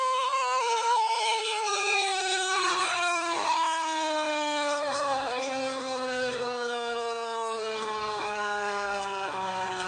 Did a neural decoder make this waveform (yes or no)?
yes